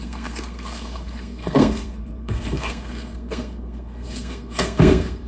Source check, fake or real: fake